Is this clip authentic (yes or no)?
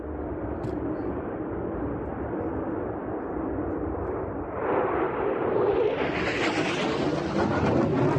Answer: yes